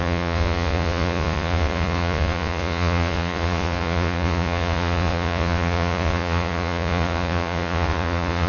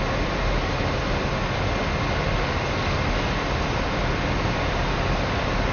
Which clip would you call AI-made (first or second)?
first